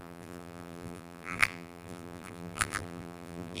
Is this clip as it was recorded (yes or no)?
no